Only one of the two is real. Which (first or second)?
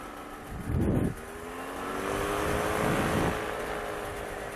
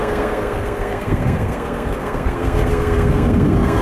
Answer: first